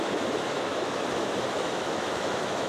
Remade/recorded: remade